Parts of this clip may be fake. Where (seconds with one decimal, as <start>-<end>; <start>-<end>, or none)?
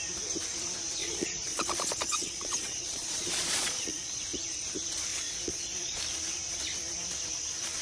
1.0-4.2; 5.1-6.0